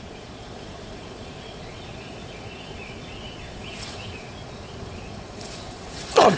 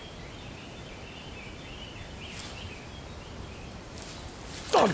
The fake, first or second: first